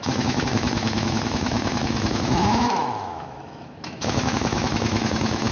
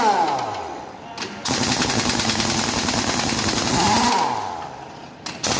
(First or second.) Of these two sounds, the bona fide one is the second